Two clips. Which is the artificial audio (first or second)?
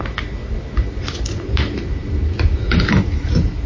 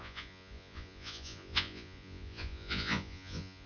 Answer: second